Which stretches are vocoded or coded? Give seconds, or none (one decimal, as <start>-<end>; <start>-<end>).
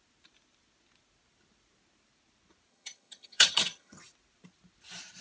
2.7-4.0